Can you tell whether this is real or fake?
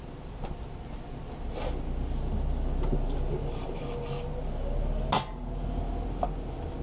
real